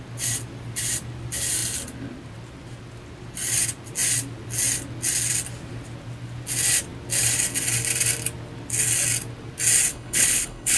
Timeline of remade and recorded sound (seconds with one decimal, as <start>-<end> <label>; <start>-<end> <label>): 0.0-9.9 recorded; 9.9-10.8 remade